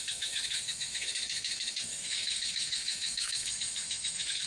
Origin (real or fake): fake